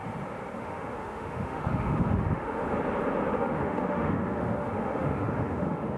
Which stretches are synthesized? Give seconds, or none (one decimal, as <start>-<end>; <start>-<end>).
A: 0.6-2.6; 3.3-6.0